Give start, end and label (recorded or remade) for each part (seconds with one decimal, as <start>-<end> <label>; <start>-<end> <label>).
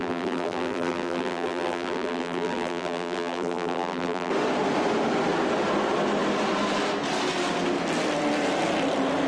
0.0-4.3 remade; 4.3-9.3 recorded